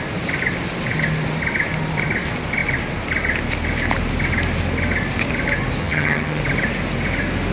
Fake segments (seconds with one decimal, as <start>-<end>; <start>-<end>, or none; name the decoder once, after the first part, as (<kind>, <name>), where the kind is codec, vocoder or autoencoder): 5.8-6.4 (vocoder, HiFi-GAN)